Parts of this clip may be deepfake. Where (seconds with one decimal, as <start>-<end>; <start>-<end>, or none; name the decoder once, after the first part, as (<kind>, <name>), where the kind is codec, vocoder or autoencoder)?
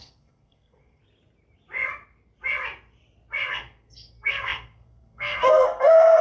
0.0-1.0 (codec, SNAC); 3.5-6.2